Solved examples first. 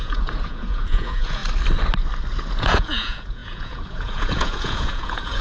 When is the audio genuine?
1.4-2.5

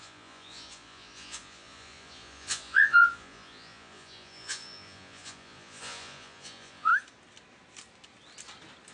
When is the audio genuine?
6.9-8.9

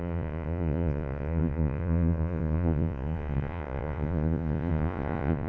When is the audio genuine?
none